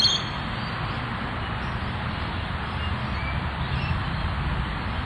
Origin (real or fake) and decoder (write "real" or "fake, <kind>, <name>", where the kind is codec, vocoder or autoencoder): real